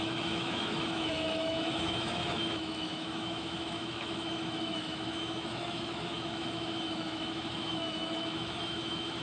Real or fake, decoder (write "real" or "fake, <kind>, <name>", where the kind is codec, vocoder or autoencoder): fake, autoencoder, DAC-VAE